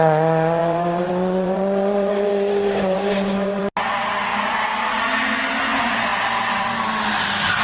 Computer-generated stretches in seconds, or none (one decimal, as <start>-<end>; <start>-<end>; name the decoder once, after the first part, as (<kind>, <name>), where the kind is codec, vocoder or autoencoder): 0.6-3.6 (vocoder, BigVGAN v2); 4.3-5.0